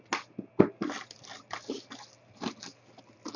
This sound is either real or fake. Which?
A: real